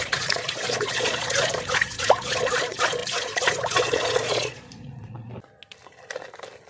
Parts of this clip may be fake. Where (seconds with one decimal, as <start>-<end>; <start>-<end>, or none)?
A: 0.0-5.3